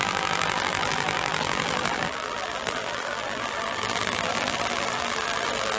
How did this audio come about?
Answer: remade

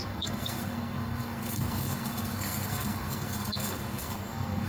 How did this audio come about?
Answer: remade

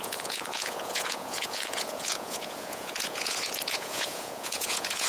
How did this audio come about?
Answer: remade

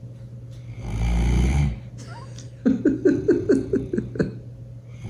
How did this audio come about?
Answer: recorded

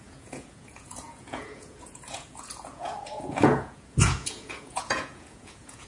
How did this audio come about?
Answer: remade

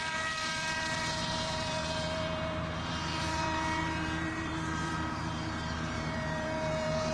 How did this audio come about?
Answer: remade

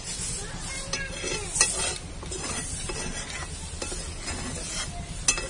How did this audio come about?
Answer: recorded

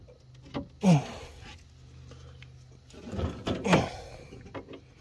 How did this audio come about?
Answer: recorded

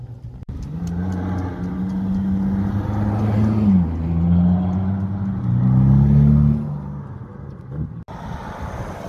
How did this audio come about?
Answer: recorded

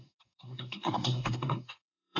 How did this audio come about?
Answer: remade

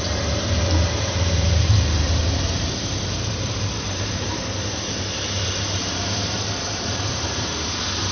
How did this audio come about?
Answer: remade